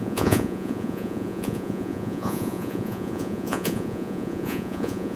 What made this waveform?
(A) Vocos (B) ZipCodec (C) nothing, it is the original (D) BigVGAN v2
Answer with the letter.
A